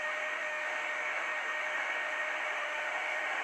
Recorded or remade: remade